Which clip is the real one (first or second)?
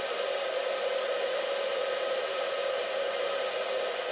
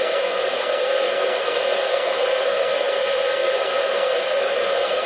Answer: first